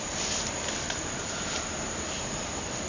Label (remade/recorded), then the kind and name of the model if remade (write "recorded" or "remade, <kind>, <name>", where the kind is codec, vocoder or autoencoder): recorded